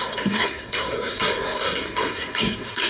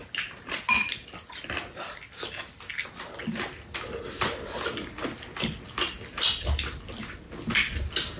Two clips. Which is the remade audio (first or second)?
first